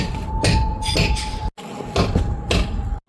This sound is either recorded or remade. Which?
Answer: recorded